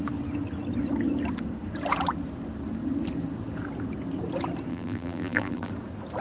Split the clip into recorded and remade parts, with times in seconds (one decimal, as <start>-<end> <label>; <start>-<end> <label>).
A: 0.0-4.7 recorded; 4.7-5.7 remade; 5.7-6.2 recorded